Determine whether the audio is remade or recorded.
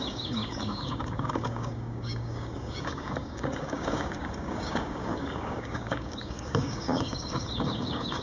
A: remade